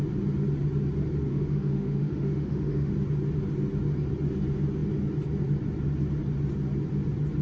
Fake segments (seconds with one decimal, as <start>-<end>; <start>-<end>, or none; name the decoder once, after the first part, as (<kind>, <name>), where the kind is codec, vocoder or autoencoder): 1.3-2.9 (autoencoder, DAC-VAE)